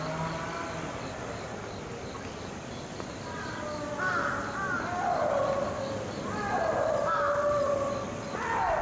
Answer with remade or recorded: recorded